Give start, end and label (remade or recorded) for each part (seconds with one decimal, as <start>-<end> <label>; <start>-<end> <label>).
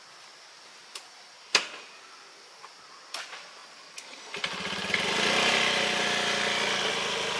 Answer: 0.0-7.4 recorded